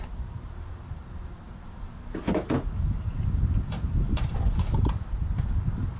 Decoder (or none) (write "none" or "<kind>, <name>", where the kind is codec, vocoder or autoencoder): vocoder, BigVGAN v2